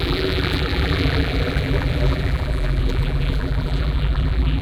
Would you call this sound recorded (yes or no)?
no